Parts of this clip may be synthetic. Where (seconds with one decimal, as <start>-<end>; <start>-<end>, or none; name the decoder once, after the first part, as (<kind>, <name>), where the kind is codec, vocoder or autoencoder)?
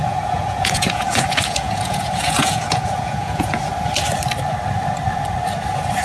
0.0-3.6 (vocoder, Vocos)